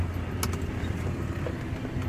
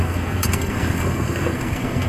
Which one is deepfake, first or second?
second